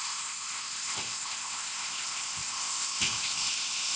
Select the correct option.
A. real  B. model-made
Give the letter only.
B